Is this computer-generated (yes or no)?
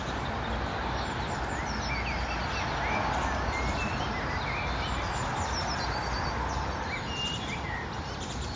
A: no